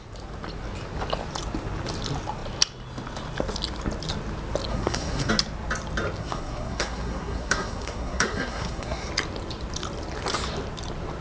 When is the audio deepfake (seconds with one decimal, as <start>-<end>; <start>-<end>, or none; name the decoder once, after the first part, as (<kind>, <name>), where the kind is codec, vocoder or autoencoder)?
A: 4.7-5.3 (codec, SNAC); 6.2-9.1